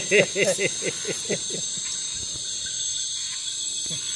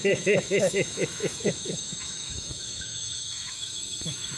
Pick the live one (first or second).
first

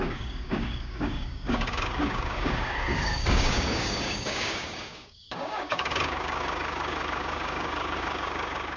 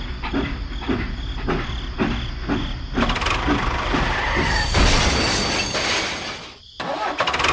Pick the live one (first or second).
second